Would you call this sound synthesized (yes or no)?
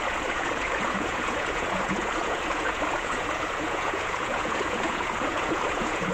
yes